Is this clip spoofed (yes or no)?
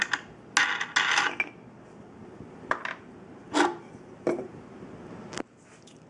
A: no